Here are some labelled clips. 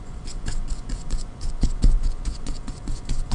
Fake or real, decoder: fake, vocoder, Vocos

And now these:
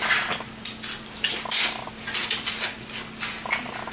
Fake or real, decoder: real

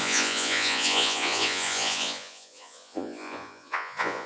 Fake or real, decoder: fake, vocoder, Vocos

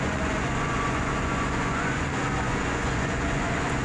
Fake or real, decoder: fake, vocoder, Vocos